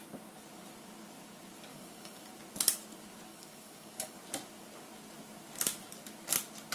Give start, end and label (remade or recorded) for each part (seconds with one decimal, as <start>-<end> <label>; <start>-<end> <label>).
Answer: 0.0-1.7 recorded; 1.7-2.3 remade; 2.3-3.3 recorded; 3.3-4.2 remade; 4.2-6.7 recorded